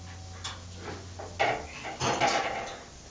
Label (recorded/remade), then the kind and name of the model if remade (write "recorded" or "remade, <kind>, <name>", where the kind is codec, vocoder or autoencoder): recorded